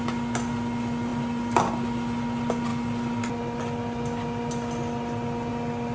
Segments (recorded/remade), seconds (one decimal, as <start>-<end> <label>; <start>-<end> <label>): 0.0-5.9 recorded

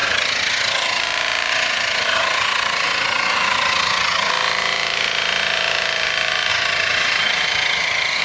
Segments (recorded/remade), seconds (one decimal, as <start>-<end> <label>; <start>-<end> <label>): 0.0-1.0 remade; 1.0-1.5 recorded; 1.5-4.3 remade; 4.3-6.5 recorded; 6.5-8.2 remade

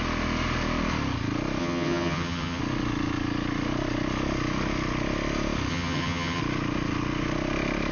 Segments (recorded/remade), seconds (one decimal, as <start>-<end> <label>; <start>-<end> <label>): 0.0-1.6 recorded; 1.6-2.6 remade; 2.6-5.7 recorded; 5.7-6.4 remade; 6.4-7.9 recorded